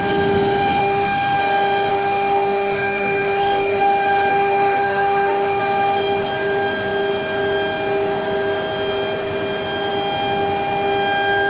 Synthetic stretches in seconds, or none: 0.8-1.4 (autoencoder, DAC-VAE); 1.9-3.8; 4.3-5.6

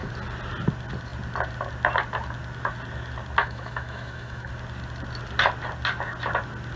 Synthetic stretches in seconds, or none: 3.4-4.5 (autoencoder, DAC-VAE)

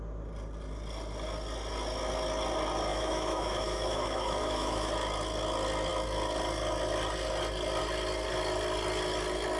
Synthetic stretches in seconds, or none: 2.9-4.9 (autoencoder, DAC-VAE)

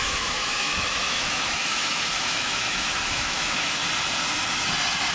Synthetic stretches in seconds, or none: 0.0-3.8 (autoencoder, DAC-VAE)

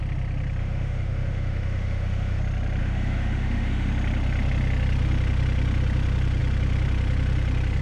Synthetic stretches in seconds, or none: 0.6-2.4 (autoencoder, DAC-VAE); 2.8-3.9

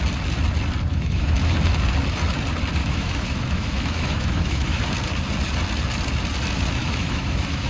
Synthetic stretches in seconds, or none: 0.9-1.4 (autoencoder, DAC-VAE); 2.8-4.8; 6.8-7.7